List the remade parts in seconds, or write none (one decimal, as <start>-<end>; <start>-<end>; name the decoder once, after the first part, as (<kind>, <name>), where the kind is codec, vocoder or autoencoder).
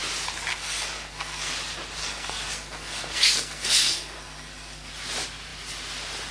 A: 0.5-1.5 (codec, SNAC); 2.0-4.9